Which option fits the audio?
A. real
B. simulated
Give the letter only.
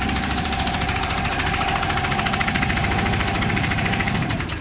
B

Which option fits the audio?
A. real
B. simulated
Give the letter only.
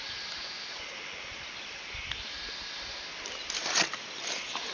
A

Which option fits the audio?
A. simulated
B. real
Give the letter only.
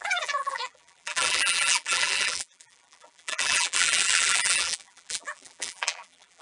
A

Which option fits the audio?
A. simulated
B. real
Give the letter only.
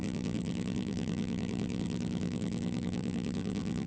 A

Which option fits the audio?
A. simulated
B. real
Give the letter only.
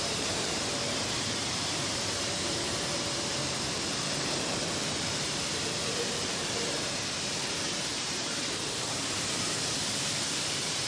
A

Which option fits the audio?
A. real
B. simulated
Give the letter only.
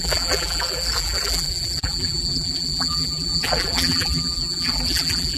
B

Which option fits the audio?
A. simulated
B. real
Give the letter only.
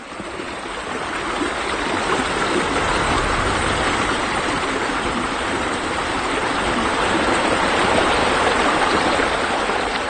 A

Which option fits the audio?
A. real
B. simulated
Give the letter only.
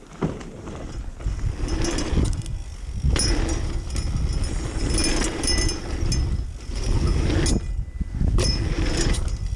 A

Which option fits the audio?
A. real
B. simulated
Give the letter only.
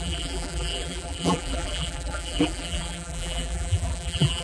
B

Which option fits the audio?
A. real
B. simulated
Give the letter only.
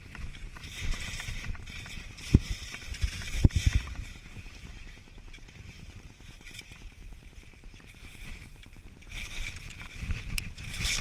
B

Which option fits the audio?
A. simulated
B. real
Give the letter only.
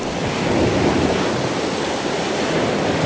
B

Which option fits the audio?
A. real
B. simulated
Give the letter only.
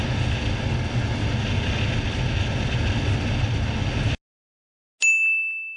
A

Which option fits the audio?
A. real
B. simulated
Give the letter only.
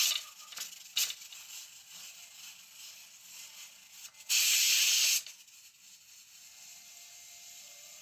A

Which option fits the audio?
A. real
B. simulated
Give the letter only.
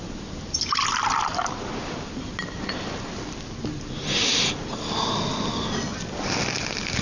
A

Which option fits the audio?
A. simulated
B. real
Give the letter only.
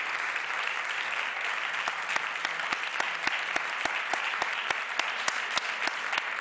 B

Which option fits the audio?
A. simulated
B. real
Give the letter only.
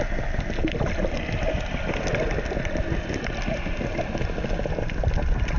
B